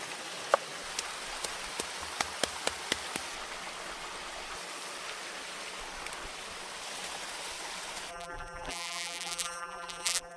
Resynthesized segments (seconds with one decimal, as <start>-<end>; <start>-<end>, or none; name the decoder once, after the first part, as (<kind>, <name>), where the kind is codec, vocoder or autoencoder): 8.1-10.4 (vocoder, BigVGAN v2)